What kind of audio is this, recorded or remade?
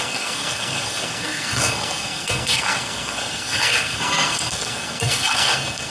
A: remade